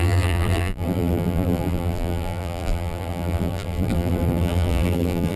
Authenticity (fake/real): fake